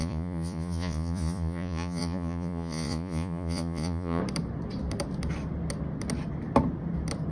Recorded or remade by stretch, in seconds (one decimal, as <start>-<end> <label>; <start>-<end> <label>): 0.0-4.2 remade; 4.2-7.3 recorded